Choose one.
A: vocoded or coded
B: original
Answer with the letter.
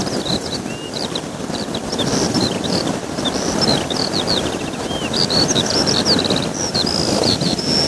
B